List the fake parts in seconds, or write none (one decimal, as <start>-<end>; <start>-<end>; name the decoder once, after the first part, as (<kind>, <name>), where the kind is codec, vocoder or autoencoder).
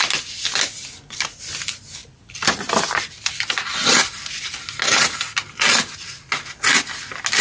2.0-4.3 (vocoder, BigVGAN v2)